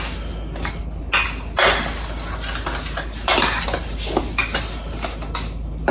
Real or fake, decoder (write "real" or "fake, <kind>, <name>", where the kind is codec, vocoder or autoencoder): real